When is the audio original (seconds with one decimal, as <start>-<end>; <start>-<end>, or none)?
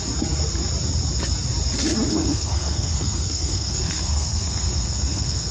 0.0-2.1